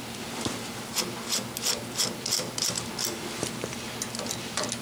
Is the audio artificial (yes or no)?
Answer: no